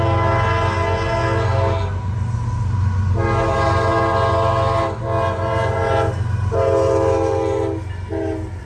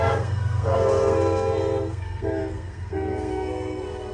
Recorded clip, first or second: first